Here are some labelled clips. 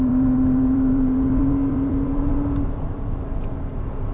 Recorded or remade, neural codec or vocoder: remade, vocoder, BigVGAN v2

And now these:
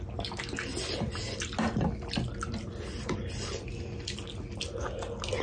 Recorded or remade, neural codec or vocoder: recorded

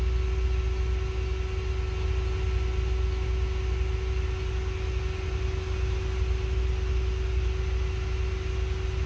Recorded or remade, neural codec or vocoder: recorded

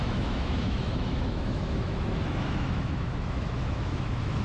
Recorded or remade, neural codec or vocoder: remade, autoencoder, DAC-VAE